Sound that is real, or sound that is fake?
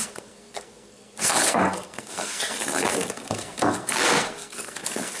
fake